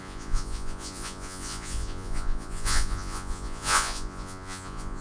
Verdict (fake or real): fake